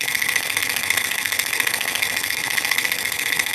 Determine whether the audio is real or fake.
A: fake